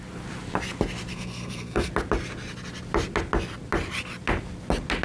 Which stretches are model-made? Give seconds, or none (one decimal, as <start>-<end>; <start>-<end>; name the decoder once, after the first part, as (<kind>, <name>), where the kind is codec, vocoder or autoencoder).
1.1-1.9 (codec, SNAC)